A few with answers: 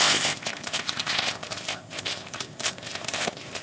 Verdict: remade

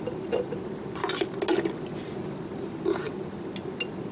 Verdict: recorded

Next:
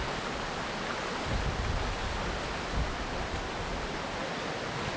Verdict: recorded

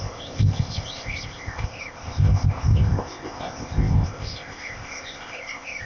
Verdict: remade